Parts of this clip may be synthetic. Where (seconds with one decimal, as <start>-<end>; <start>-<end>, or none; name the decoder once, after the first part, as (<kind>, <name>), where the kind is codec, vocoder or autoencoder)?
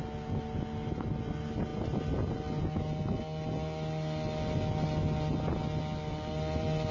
none